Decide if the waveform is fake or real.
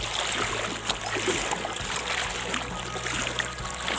real